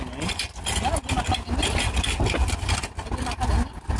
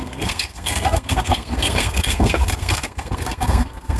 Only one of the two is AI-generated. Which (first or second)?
second